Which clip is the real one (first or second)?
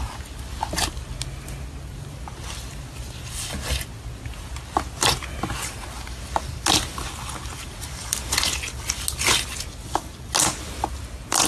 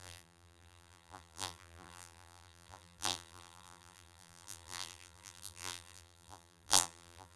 first